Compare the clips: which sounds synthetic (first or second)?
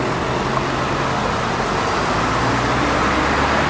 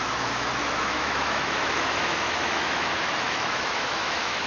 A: second